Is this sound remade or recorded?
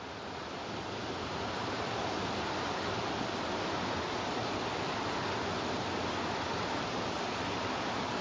remade